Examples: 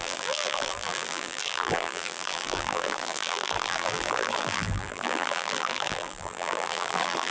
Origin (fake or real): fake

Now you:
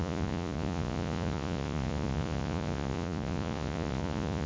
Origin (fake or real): fake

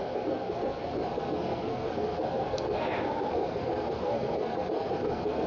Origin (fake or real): fake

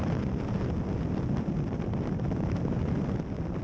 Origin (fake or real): real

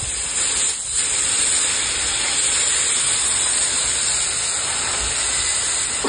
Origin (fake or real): real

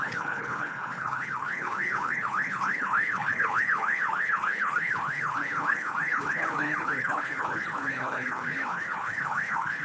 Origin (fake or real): fake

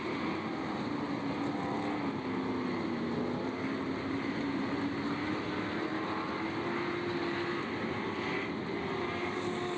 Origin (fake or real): real